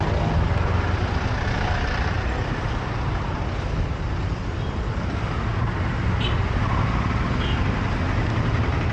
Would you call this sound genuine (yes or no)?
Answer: yes